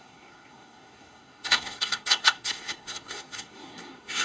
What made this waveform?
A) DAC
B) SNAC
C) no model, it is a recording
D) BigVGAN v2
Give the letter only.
B